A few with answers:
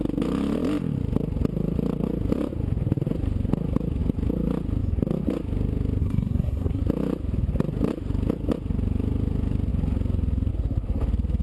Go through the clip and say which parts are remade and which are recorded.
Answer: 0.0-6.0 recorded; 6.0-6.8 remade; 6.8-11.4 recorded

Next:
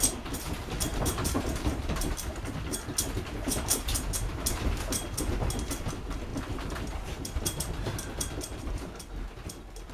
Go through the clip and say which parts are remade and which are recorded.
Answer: 0.0-0.9 recorded; 0.9-2.3 remade; 2.3-9.9 recorded